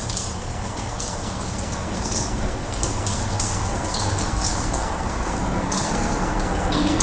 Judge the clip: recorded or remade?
remade